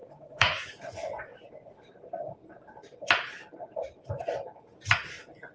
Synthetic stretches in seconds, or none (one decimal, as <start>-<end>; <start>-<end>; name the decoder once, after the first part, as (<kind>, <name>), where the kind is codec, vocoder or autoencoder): 0.0-0.7 (codec, DAC)